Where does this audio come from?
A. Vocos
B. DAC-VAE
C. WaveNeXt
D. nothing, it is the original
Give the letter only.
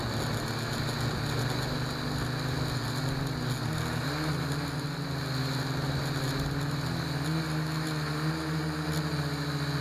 D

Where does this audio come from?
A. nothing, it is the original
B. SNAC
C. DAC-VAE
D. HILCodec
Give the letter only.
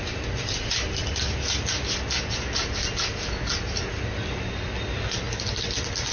A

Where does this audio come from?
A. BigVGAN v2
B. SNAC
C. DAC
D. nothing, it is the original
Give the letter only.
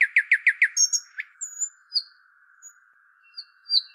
D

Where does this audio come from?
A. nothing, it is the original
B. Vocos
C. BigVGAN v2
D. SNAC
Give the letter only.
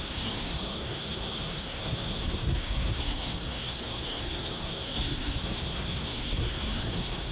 D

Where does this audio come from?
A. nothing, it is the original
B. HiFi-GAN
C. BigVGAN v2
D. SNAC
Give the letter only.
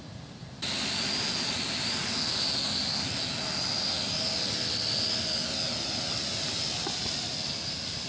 A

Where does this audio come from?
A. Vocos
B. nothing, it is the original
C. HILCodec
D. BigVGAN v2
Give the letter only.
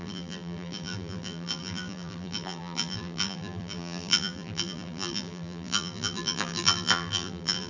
D